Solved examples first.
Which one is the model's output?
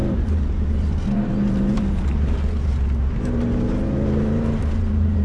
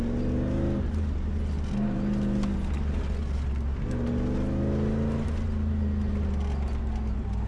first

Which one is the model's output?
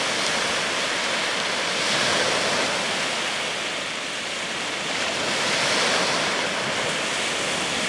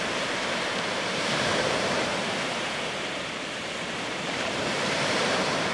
second